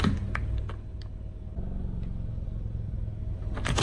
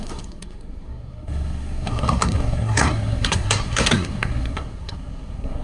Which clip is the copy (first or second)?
second